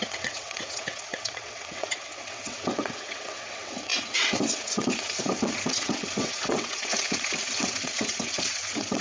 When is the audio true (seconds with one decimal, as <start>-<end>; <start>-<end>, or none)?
none